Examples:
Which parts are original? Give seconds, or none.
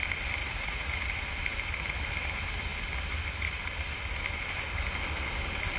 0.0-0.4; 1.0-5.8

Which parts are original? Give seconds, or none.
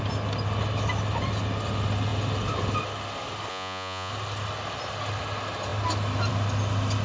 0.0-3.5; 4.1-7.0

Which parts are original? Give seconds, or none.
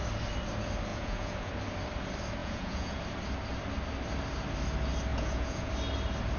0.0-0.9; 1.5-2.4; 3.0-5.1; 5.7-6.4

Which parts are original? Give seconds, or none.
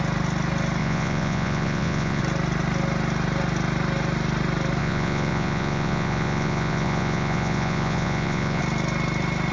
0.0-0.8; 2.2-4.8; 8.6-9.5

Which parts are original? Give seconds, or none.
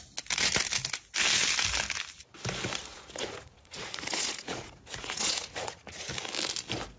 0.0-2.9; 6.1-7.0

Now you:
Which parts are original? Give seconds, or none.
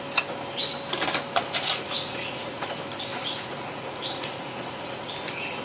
0.0-1.7; 2.7-3.1; 5.1-5.6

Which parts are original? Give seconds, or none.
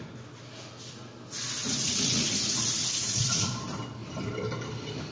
0.0-1.6; 3.5-5.1